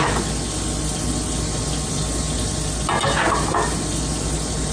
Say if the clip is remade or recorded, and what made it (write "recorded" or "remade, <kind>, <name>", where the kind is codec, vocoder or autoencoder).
recorded